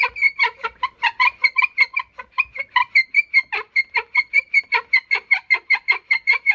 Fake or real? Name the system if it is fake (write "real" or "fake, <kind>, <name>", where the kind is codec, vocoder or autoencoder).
real